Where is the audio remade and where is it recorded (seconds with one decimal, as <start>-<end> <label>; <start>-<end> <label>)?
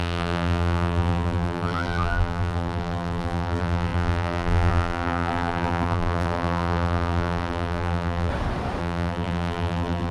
0.0-8.3 remade; 8.3-8.8 recorded; 8.8-10.1 remade